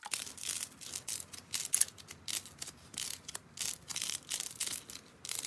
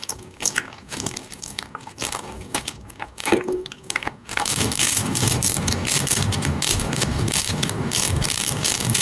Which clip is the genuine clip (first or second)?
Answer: first